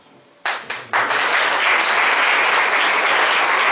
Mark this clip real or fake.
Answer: real